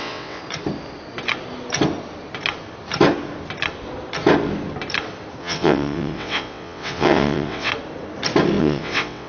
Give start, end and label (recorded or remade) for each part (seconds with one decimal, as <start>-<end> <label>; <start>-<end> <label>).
0.0-0.4 remade; 0.4-5.4 recorded; 5.4-7.7 remade; 7.7-8.6 recorded; 8.6-9.3 remade